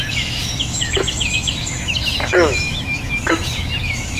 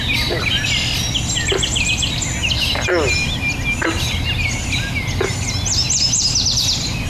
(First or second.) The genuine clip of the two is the second